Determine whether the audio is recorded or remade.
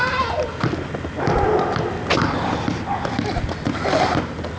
recorded